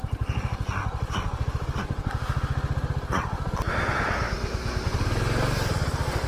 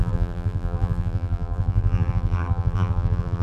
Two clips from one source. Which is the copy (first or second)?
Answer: second